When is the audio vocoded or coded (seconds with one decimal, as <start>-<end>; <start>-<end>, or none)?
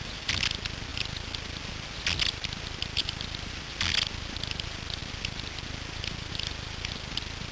none